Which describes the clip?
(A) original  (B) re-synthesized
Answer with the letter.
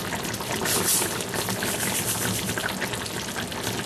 A